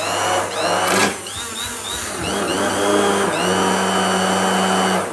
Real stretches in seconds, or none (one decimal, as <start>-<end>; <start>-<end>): 0.0-5.1